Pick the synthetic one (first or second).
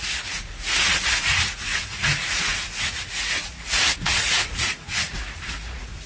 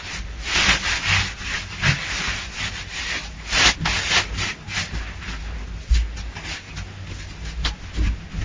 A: first